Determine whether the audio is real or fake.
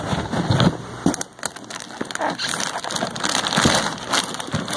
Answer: real